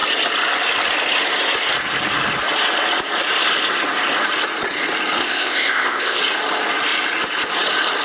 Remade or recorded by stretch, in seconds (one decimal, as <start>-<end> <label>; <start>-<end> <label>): 0.0-5.2 recorded; 5.2-6.2 remade; 6.2-8.0 recorded